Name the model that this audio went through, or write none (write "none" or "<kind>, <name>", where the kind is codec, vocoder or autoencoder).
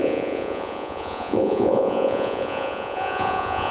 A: vocoder, Vocos